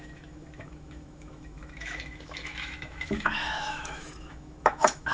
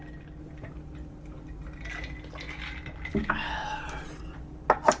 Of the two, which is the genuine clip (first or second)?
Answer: second